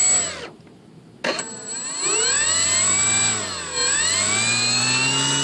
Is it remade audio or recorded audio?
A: recorded